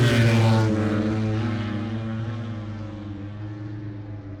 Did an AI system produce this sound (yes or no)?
no